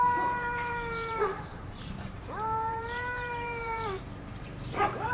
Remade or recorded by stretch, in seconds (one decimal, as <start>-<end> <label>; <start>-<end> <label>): 0.0-5.1 remade